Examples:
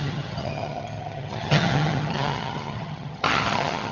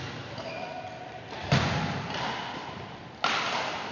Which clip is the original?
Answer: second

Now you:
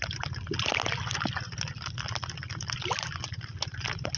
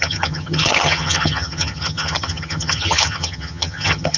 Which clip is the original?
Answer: first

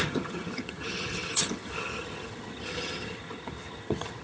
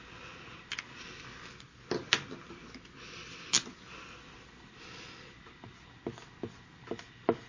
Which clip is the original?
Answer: second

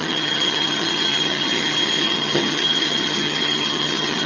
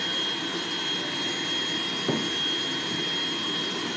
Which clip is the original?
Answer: second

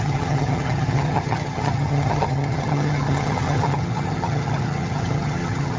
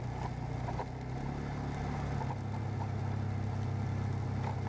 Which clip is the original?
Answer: second